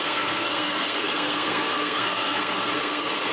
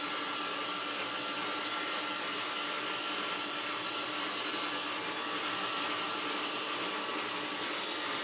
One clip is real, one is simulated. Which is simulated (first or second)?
first